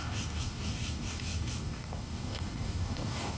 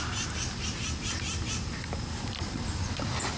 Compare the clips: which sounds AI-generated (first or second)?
first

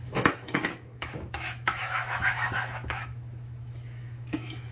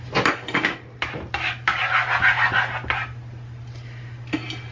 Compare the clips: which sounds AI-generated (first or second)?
first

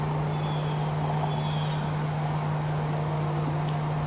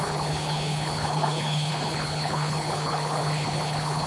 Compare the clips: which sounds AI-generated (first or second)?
second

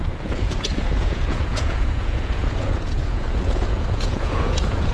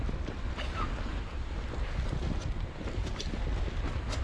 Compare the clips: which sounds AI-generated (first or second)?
first